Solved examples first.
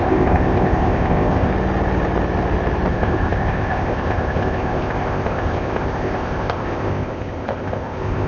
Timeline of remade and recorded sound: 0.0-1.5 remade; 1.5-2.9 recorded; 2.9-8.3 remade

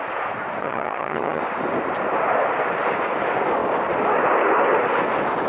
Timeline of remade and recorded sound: 0.0-0.6 recorded; 0.6-1.4 remade; 1.4-5.5 recorded

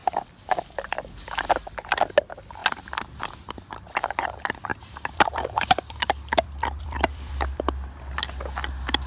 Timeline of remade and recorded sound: 0.0-1.6 remade; 1.6-4.7 recorded; 4.7-7.3 remade; 7.3-9.1 recorded

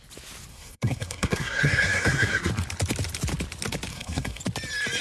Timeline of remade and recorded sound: 0.0-0.5 recorded; 0.5-2.5 remade; 2.5-3.9 recorded; 3.9-4.4 remade; 4.4-5.0 recorded

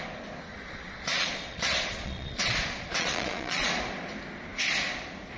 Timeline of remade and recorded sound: 0.0-0.5 recorded; 0.5-3.7 remade; 3.7-5.4 recorded

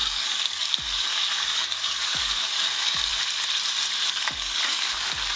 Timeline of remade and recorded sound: 0.0-3.1 remade; 3.1-4.1 recorded; 4.1-5.4 remade